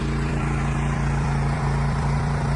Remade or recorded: remade